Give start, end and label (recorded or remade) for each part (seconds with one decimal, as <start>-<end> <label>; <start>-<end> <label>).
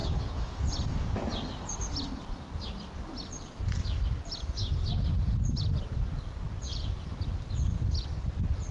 0.0-0.6 remade; 0.6-8.7 recorded